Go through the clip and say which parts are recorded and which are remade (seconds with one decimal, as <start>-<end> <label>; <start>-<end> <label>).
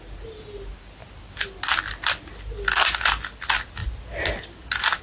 0.0-5.0 recorded